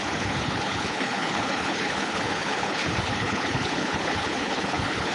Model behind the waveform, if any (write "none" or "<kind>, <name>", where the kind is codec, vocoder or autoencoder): codec, HILCodec